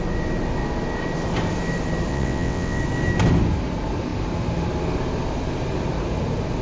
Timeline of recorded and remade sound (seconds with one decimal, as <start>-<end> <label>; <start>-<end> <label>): 0.0-2.1 recorded; 2.1-2.8 remade; 2.8-6.6 recorded